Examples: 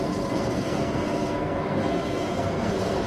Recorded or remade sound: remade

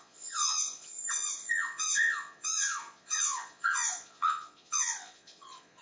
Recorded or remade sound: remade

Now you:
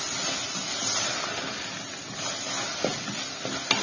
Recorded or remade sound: recorded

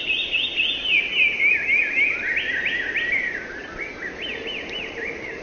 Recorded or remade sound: recorded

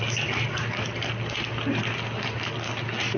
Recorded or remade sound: recorded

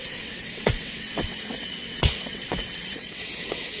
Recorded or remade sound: remade